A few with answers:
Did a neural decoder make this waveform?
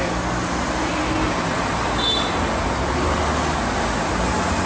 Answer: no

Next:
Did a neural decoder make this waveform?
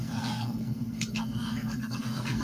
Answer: yes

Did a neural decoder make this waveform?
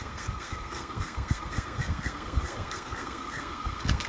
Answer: yes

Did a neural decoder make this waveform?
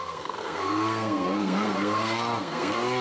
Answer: yes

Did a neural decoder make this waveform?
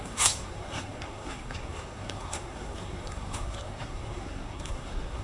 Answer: yes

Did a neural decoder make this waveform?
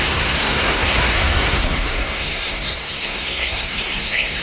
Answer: yes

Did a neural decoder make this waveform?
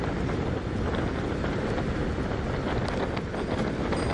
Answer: no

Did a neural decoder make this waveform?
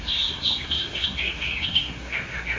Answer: yes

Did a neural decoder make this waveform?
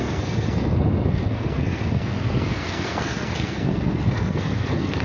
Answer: yes